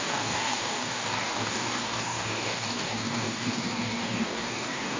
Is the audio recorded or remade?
remade